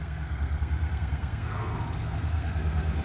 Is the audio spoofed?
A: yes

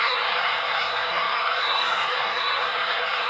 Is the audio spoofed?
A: yes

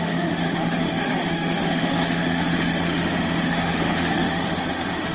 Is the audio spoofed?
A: yes